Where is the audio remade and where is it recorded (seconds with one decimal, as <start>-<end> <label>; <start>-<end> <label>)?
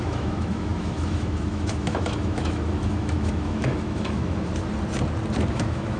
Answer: 0.0-4.5 remade; 4.5-5.5 recorded; 5.5-6.0 remade